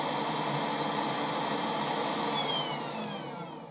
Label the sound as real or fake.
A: real